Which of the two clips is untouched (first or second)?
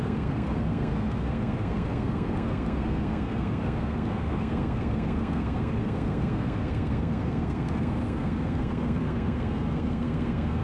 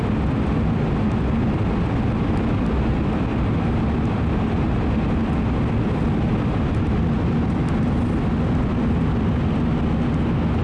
second